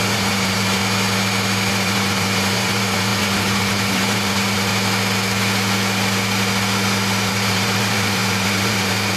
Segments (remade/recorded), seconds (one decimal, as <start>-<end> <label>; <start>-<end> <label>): 0.0-0.8 remade; 0.8-1.7 recorded; 1.7-4.7 remade; 4.7-7.3 recorded; 7.3-9.2 remade